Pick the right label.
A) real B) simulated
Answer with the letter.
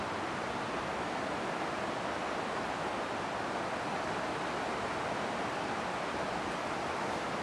A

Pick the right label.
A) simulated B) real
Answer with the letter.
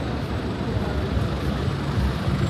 B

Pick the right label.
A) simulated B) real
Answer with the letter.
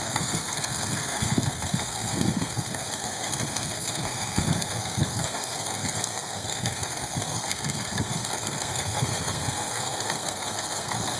A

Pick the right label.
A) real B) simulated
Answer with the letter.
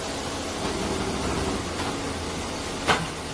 A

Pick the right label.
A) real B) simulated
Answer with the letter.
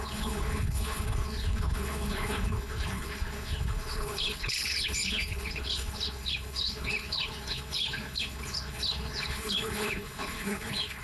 B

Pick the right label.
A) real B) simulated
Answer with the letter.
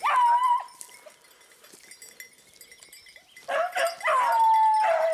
A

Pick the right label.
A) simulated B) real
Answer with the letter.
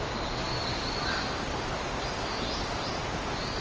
B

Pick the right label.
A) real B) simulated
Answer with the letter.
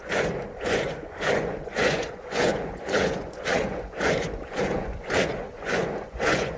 B